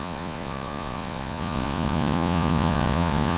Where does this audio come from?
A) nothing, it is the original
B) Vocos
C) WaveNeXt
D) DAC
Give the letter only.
B